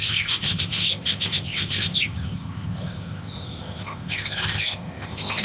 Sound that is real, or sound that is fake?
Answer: fake